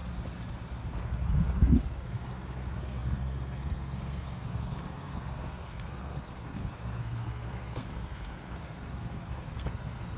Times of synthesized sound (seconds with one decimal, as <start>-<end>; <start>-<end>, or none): 1.0-10.2